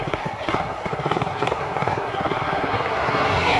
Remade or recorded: remade